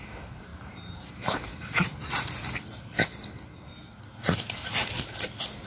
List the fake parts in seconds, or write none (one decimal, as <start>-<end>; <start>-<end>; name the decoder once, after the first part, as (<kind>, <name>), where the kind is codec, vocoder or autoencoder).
0.5-2.3 (vocoder, BigVGAN v2)